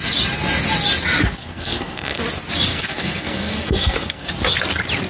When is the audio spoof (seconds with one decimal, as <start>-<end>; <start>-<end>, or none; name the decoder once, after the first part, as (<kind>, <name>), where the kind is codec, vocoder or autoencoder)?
1.4-2.2 (codec, SNAC); 2.7-4.3